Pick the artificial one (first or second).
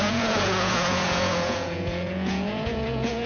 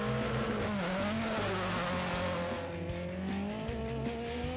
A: first